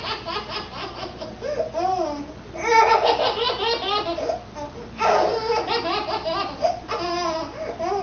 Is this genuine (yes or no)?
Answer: yes